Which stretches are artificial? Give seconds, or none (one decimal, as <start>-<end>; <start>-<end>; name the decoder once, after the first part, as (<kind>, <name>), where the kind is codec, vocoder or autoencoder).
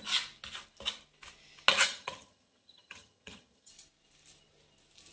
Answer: 1.7-3.7 (vocoder, HiFi-GAN)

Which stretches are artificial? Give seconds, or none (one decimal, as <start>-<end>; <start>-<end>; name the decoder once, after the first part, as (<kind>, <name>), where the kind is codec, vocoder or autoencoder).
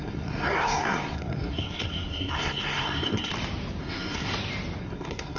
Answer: 0.0-3.3 (codec, SNAC); 3.8-4.3; 4.8-5.4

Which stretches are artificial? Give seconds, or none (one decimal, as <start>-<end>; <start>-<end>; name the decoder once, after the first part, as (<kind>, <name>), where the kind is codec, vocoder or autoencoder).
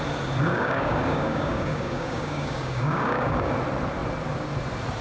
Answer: 0.5-3.5 (codec, DAC)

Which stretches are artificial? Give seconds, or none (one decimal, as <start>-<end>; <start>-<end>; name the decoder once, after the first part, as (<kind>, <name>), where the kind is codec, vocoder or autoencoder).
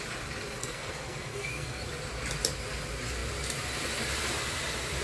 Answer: 0.6-1.8 (codec, SNAC)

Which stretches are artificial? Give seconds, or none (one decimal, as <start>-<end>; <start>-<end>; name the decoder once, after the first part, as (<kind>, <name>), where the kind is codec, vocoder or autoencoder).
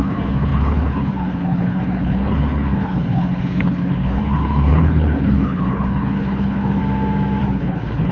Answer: 0.0-6.8 (codec, HILCodec); 7.4-8.1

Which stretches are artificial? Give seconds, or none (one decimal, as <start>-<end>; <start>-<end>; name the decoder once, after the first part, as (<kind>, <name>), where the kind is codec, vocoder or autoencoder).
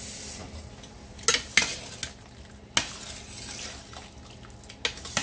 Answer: none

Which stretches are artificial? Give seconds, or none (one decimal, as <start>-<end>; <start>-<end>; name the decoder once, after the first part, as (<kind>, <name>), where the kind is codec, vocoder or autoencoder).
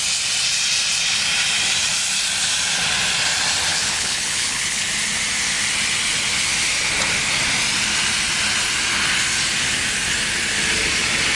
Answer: 3.7-4.9 (codec, HILCodec)